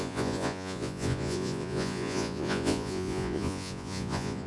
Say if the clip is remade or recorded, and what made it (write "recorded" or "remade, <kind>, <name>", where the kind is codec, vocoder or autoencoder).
remade, vocoder, Vocos